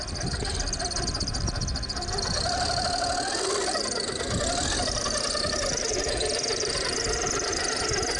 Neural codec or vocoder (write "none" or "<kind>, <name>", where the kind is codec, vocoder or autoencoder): none